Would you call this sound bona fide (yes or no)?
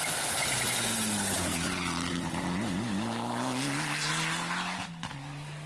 yes